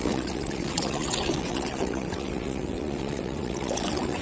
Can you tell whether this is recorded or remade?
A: remade